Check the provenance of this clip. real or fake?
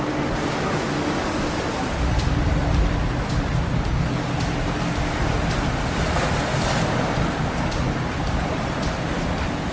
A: real